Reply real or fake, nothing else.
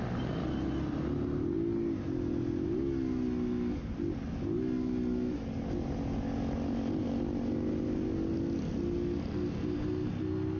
real